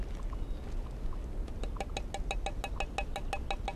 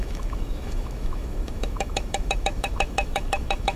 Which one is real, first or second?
first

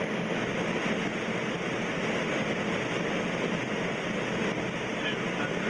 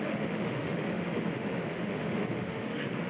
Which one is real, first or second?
first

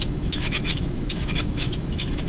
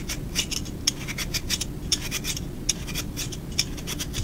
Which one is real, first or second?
second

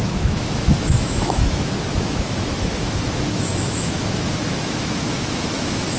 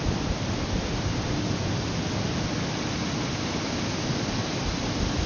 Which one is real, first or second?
second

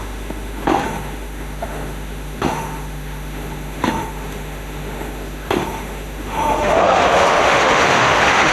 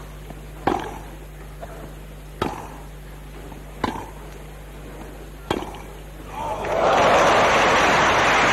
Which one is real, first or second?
second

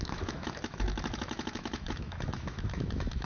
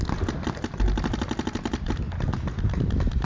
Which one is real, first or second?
second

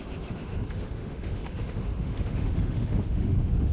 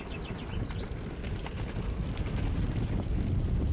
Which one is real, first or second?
second